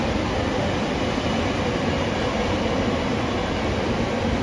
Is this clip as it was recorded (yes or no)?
yes